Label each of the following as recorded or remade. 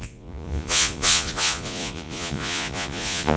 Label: remade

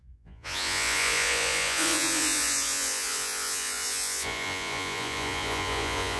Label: remade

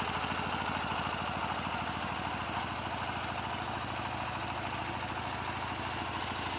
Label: recorded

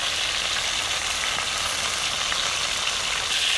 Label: recorded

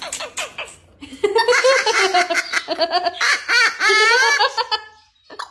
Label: recorded